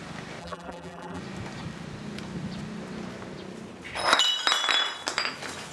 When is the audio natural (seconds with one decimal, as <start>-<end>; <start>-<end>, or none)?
0.0-0.4; 1.2-5.7